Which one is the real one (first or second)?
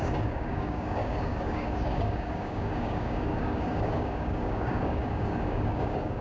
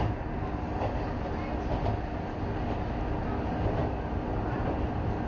second